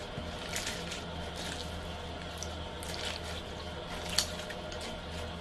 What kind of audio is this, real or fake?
real